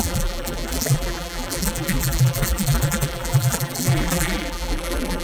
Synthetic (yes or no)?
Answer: yes